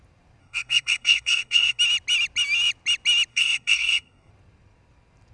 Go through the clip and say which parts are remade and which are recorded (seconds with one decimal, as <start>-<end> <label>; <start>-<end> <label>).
0.0-0.4 recorded; 0.4-1.8 remade; 1.8-3.3 recorded; 3.3-4.3 remade; 4.3-5.3 recorded